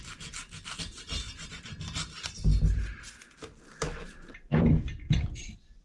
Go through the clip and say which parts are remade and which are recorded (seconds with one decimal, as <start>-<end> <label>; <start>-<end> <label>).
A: 0.0-2.5 remade; 2.5-3.6 recorded; 3.6-5.8 remade